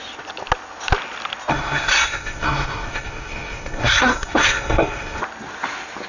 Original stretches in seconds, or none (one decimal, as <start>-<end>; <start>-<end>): 0.0-1.5; 5.2-6.1